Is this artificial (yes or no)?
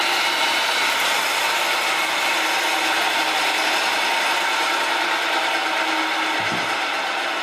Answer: no